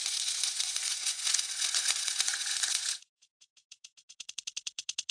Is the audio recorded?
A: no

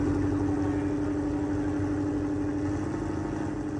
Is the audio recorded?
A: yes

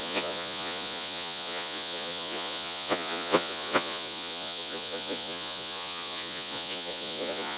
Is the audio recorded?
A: no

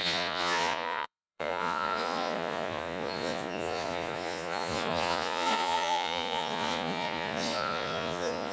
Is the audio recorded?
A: no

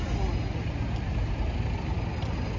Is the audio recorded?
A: yes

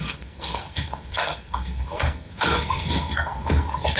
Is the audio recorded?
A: no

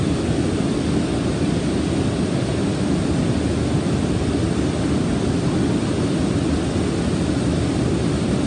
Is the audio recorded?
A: yes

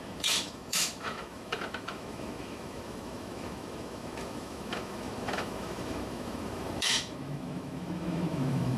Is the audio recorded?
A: no